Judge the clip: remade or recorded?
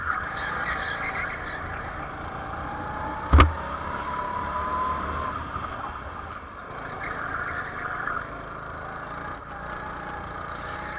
recorded